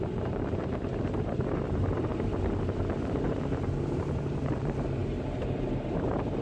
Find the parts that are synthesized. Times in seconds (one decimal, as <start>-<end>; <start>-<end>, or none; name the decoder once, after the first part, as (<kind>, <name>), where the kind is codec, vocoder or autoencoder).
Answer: 0.0-2.1 (vocoder, BigVGAN v2); 3.2-6.4